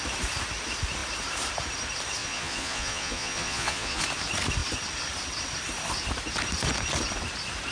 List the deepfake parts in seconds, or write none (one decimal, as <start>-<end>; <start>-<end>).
2.2-4.0